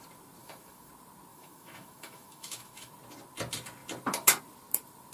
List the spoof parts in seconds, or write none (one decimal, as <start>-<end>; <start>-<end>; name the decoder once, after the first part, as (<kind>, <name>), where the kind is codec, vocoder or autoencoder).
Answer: 0.4-0.9 (autoencoder, DAC-VAE); 1.3-2.9